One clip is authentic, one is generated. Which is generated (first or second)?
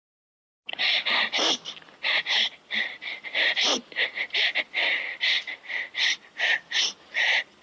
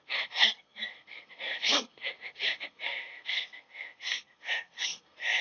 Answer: second